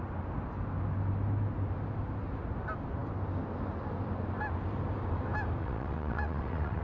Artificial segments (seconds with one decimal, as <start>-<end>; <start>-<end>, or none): 5.6-6.8